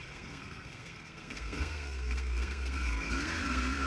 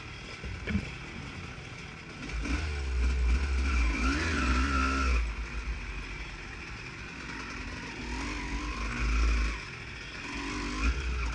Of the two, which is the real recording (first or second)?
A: second